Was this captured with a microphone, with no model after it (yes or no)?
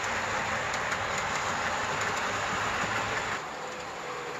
yes